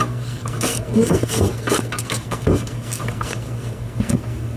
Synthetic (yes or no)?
yes